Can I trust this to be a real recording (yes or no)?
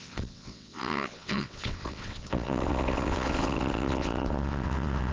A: no